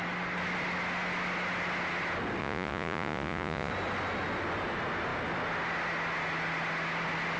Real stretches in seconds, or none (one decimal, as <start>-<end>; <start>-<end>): 0.0-2.4; 3.7-7.4

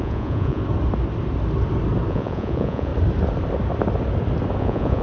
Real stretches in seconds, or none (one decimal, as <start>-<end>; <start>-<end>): 0.6-2.1; 2.9-4.6

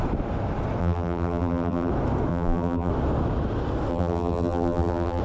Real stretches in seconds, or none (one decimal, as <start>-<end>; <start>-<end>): 0.0-0.8; 1.9-2.3; 2.9-3.9

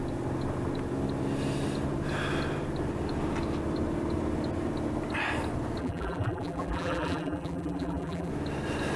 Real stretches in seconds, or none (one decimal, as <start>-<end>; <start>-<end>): 0.0-5.8; 8.3-9.0

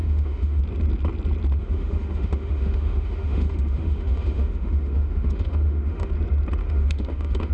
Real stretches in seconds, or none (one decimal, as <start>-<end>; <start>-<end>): 0.6-1.6; 6.1-6.6

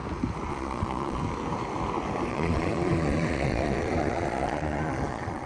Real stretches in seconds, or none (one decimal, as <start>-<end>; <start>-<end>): 0.0-0.5; 1.2-2.3

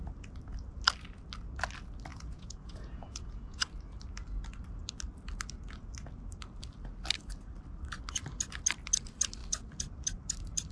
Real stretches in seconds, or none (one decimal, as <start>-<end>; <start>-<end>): 0.0-2.1; 3.7-10.7